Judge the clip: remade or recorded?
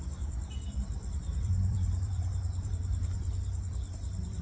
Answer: remade